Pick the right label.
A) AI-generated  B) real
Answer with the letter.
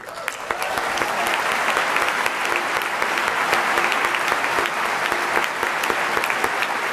B